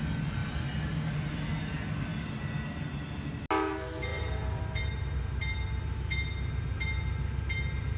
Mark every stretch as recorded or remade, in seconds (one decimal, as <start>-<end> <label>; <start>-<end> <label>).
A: 0.0-4.1 recorded; 4.1-4.8 remade; 4.8-8.0 recorded